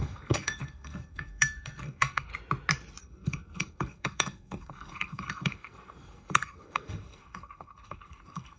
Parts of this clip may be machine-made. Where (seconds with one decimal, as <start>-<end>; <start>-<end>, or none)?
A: 0.0-2.3; 3.0-8.6